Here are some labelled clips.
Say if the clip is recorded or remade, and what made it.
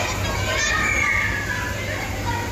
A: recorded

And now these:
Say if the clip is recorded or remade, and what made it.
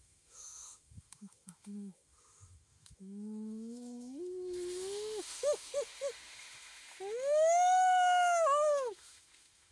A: remade, autoencoder, DAC-VAE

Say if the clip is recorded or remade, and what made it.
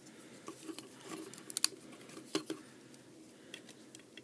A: recorded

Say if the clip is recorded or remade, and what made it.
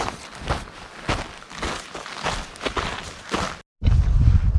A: recorded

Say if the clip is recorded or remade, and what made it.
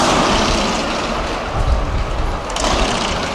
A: recorded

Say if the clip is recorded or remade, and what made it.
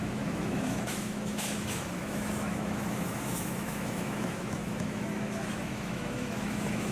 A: remade, autoencoder, DAC-VAE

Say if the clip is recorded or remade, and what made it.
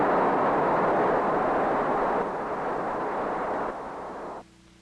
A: recorded